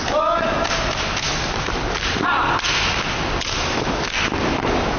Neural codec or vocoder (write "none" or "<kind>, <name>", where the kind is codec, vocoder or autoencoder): none